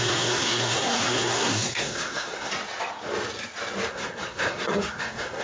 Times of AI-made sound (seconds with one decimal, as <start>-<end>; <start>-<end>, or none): 0.0-2.5; 3.9-5.4